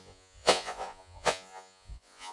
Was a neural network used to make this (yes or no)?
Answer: yes